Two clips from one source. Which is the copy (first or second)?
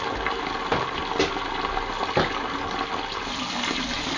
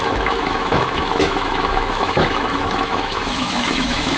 second